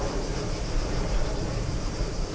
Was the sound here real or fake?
fake